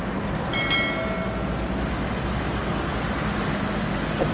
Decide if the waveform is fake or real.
real